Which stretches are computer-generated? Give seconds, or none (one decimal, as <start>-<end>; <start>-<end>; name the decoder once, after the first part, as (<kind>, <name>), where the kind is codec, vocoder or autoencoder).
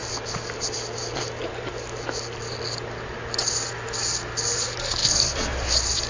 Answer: 5.0-6.1 (vocoder, BigVGAN v2)